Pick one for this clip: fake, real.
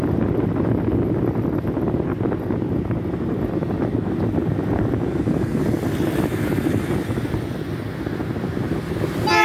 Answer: real